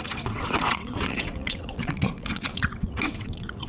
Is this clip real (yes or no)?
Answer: no